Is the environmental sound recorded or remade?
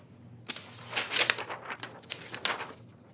recorded